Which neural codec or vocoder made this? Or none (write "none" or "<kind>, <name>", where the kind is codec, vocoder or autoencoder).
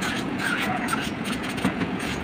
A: vocoder, Vocos